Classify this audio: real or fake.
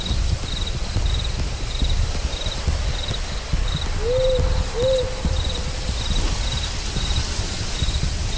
real